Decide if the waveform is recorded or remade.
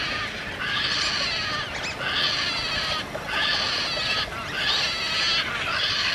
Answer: recorded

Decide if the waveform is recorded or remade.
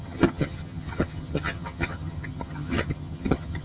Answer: remade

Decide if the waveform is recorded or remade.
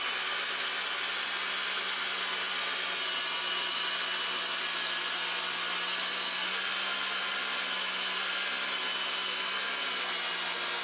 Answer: recorded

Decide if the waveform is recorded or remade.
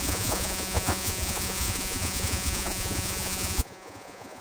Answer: remade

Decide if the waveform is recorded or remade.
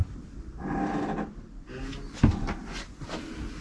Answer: recorded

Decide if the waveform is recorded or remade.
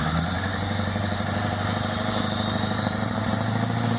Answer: remade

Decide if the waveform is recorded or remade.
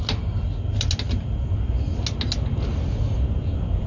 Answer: recorded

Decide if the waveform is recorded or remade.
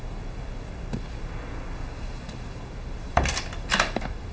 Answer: recorded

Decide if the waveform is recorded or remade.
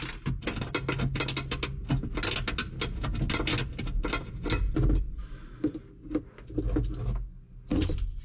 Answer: recorded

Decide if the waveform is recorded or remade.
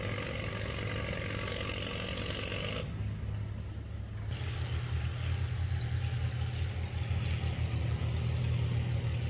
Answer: recorded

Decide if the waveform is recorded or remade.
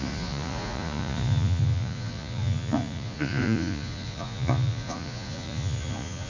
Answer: remade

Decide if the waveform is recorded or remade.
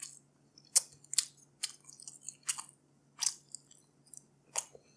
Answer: recorded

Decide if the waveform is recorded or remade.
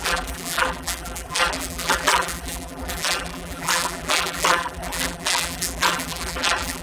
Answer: remade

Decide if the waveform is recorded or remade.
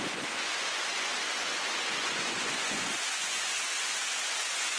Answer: remade